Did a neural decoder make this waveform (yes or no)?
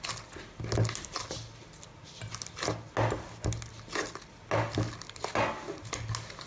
no